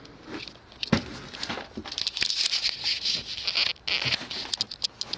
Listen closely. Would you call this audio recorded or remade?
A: recorded